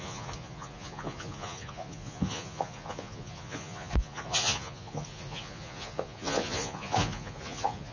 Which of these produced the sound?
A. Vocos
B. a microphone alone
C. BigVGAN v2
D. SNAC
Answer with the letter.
A